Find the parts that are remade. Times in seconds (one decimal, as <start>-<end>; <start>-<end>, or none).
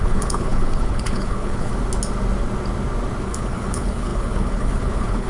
0.0-1.7; 3.2-5.3